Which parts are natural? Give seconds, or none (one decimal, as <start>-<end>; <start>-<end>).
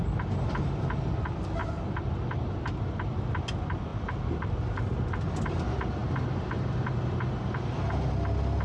0.0-8.6